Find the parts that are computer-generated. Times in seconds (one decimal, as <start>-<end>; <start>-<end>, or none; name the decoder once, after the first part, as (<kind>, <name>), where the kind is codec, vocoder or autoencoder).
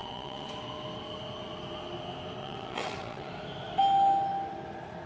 0.0-0.5 (vocoder, WaveNeXt); 2.4-3.3